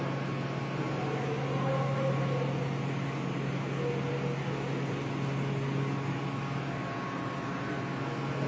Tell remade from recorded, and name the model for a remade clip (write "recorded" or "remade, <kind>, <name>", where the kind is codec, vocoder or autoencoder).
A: recorded